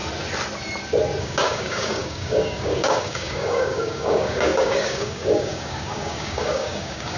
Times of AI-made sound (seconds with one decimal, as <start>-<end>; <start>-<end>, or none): 1.2-7.2